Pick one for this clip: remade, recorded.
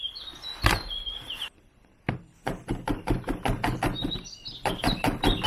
recorded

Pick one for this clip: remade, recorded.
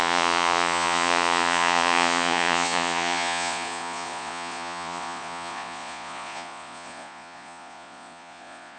remade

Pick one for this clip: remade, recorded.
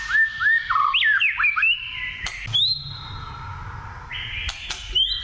recorded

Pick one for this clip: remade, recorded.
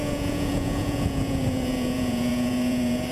remade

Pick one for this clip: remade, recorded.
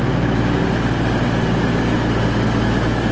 recorded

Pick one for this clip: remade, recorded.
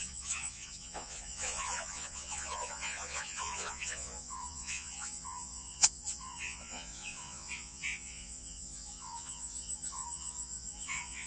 remade